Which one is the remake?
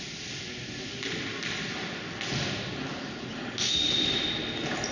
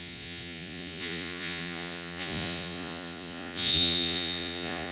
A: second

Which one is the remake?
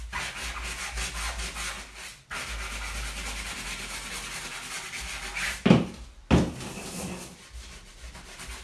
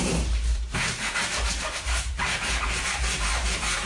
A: second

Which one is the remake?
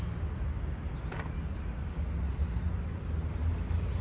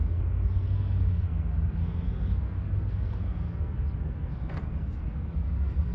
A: second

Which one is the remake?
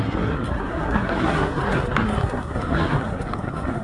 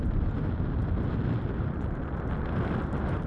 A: first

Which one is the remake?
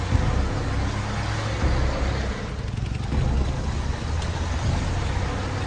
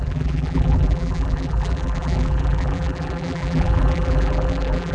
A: second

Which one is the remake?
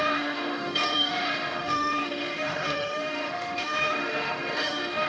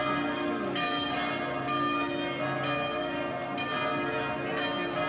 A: first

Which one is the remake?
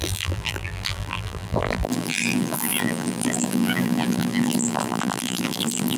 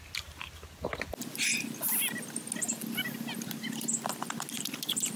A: first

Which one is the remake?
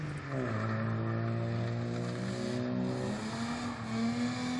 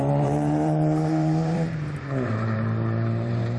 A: second